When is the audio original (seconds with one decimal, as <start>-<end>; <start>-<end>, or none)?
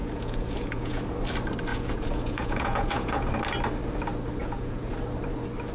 1.0-1.7; 3.3-4.4; 4.9-5.7